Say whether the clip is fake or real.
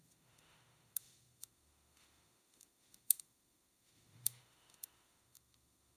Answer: fake